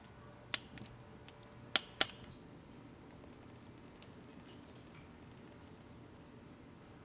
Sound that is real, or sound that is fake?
real